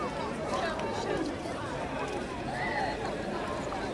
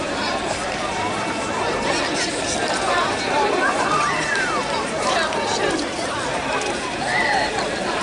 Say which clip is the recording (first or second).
first